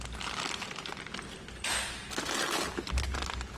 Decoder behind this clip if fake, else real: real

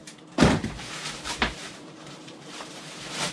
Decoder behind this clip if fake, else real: fake, vocoder, BigVGAN v2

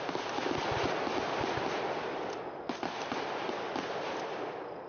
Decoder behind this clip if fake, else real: real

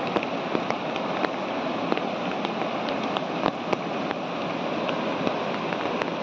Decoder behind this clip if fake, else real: real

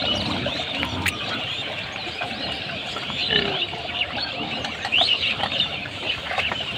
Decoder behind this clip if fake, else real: fake, vocoder, BigVGAN v2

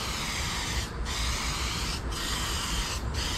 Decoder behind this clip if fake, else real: real